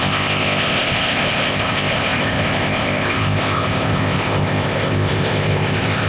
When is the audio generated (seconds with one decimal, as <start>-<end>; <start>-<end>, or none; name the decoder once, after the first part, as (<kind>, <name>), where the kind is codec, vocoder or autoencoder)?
0.0-6.1 (codec, ZipCodec)